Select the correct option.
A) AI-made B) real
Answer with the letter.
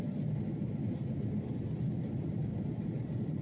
B